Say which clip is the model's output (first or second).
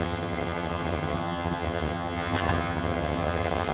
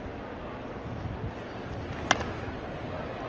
first